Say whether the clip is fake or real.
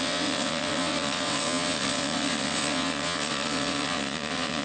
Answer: fake